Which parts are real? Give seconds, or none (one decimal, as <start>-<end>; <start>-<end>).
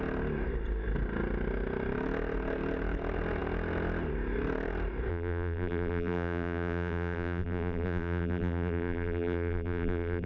0.0-5.1